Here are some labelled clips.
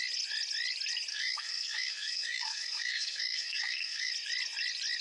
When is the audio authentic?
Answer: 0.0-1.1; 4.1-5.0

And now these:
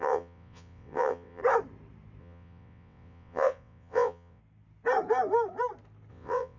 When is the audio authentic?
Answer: 1.4-2.2; 4.4-6.1